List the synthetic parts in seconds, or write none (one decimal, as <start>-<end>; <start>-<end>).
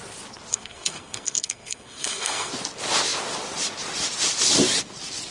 0.5-2.5